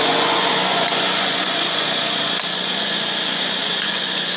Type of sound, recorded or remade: remade